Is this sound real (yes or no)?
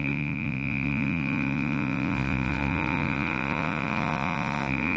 no